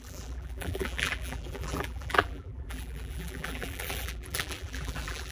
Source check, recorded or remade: remade